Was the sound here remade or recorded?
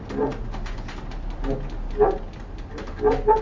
recorded